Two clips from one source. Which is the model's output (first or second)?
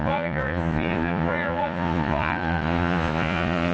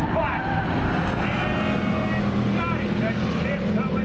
first